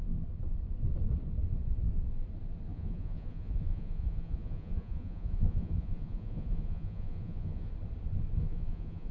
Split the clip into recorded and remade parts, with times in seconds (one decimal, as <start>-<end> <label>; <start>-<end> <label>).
0.0-2.7 recorded; 2.7-7.7 remade; 7.7-8.4 recorded; 8.4-9.1 remade